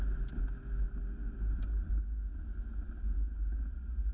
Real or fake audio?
real